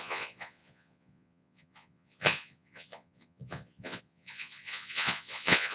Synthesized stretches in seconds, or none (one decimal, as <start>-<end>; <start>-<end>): 0.0-5.7